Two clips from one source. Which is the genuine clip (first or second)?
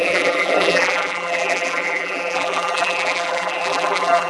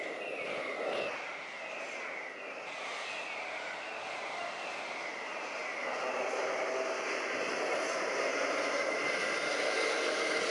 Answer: second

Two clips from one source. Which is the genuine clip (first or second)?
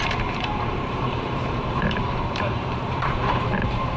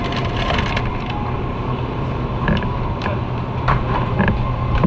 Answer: second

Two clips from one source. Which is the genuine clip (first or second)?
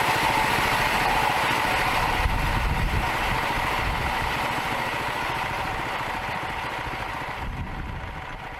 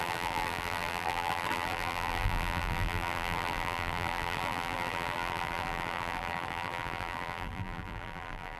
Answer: first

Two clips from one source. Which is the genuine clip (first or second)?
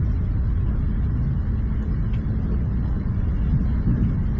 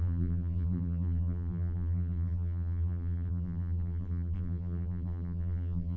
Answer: first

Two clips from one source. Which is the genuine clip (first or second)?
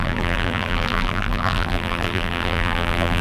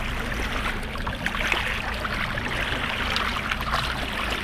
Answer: second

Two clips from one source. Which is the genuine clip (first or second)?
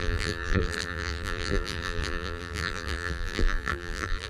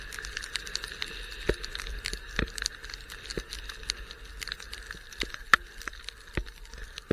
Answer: second